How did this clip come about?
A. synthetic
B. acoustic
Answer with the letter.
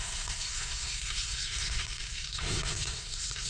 A